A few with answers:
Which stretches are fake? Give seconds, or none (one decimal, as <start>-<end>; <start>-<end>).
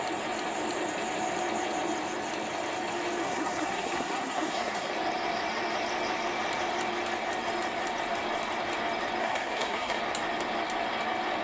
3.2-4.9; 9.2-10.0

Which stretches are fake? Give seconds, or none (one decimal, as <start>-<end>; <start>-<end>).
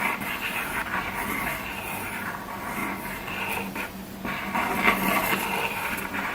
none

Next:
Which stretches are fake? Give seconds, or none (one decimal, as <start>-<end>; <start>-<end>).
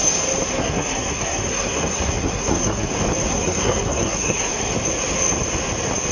0.6-2.9; 3.3-4.7